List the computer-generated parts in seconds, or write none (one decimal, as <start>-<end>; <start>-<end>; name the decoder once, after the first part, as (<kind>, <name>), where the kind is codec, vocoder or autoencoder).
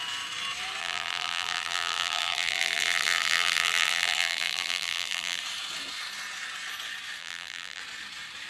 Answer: 0.8-5.4 (vocoder, BigVGAN v2); 7.2-7.8